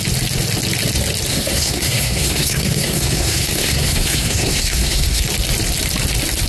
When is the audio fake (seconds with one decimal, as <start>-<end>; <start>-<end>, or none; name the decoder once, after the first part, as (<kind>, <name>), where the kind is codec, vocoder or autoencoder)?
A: 1.3-5.2 (codec, SNAC)